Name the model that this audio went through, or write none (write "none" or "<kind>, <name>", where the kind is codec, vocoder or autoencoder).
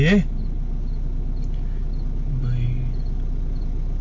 none